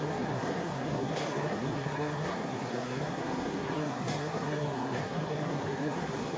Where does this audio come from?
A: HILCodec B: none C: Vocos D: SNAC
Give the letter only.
D